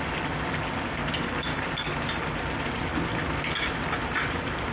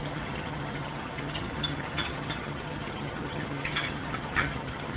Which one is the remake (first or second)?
second